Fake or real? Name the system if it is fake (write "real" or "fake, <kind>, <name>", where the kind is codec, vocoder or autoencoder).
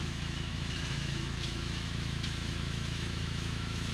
fake, autoencoder, DAC-VAE